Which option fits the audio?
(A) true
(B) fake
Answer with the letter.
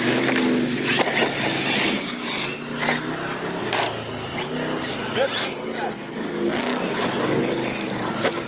A